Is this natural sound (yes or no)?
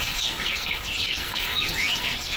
no